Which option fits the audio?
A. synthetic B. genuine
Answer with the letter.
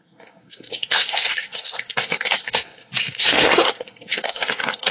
A